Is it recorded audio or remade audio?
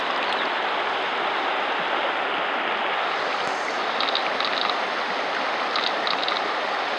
recorded